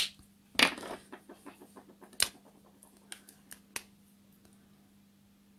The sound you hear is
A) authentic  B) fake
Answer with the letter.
A